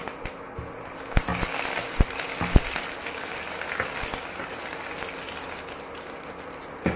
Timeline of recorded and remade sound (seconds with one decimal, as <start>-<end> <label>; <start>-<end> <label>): 0.0-7.0 recorded

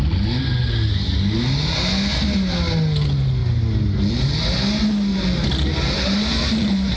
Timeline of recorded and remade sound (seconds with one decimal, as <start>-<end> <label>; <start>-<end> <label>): 0.0-5.1 recorded; 5.1-7.0 remade

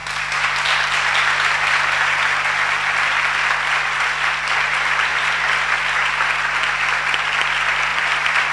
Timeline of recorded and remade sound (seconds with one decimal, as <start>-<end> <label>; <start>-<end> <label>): 0.0-5.1 recorded; 5.1-5.8 remade; 5.8-7.9 recorded; 7.9-8.5 remade

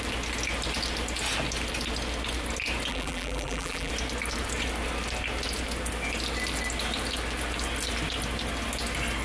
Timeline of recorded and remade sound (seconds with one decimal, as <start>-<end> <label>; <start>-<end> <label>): 0.0-2.9 recorded; 2.9-3.9 remade; 3.9-9.2 recorded

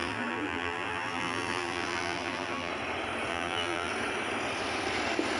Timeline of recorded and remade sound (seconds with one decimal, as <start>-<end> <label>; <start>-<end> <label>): 0.0-2.7 remade; 2.7-3.3 recorded; 3.3-3.9 remade; 3.9-5.4 recorded